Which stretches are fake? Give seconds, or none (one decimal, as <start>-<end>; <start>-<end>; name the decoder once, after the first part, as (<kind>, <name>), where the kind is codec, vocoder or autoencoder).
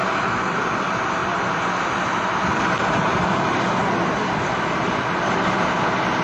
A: none